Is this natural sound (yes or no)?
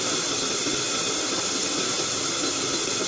yes